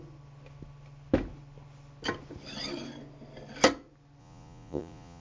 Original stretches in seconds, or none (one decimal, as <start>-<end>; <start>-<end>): 0.0-4.2